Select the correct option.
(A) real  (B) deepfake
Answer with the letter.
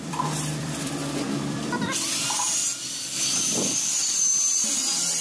B